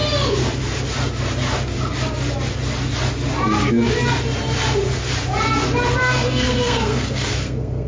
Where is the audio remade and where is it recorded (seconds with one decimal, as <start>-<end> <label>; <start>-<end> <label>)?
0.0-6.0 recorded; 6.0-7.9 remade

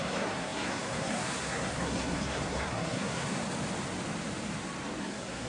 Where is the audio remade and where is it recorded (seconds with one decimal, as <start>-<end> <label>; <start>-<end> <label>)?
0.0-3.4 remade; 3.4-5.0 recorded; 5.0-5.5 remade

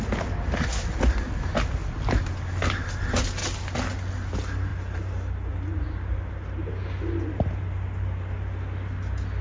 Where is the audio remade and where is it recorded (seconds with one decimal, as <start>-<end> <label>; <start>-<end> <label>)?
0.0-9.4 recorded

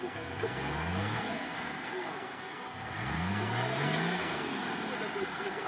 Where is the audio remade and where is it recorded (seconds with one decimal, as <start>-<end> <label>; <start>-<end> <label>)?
0.0-4.6 remade; 4.6-5.2 recorded; 5.2-5.7 remade

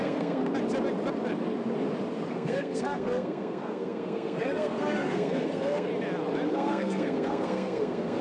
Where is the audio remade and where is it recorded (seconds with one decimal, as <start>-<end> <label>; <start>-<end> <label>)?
0.0-0.4 remade; 0.4-2.3 recorded; 2.3-5.9 remade; 5.9-6.5 recorded; 6.5-8.2 remade